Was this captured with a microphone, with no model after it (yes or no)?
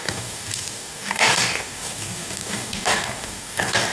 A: no